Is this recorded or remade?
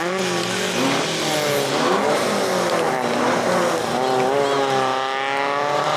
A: recorded